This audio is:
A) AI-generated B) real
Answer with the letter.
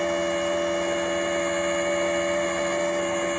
B